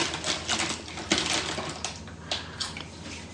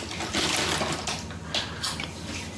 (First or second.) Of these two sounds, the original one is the first